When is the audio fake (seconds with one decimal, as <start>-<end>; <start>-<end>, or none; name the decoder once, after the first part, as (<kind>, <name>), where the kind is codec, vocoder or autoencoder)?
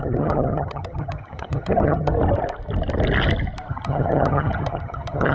0.0-2.1 (vocoder, HiFi-GAN); 3.7-5.3